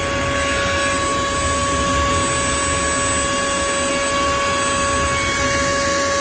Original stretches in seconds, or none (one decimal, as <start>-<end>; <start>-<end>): 0.0-6.2